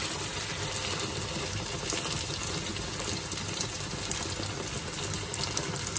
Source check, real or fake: real